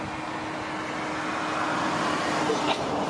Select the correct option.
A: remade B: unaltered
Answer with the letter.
B